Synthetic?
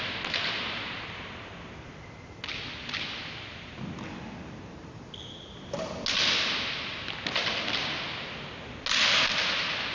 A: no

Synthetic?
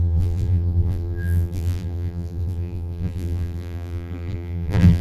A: yes